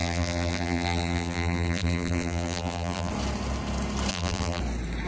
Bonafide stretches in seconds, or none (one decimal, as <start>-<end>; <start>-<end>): 3.1-4.1; 4.6-5.1